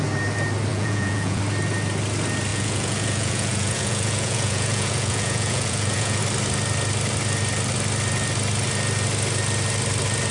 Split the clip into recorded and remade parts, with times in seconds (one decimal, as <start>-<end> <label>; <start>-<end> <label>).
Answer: 0.0-0.7 recorded; 0.7-1.4 remade; 1.4-2.5 recorded; 2.5-6.2 remade; 6.2-10.3 recorded